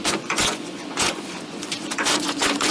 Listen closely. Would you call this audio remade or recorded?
remade